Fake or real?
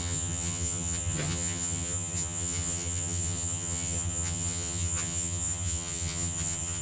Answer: fake